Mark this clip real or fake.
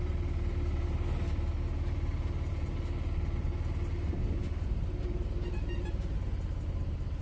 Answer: real